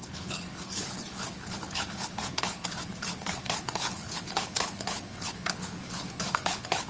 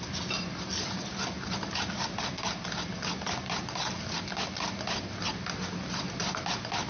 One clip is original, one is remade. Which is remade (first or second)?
first